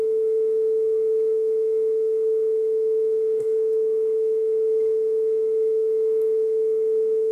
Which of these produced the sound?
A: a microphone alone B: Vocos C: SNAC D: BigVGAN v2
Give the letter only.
C